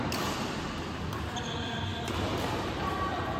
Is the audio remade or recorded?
recorded